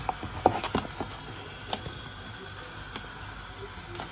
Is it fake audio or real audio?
real